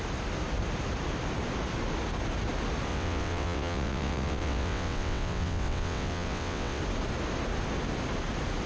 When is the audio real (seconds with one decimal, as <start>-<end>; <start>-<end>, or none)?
0.0-2.9; 6.8-8.7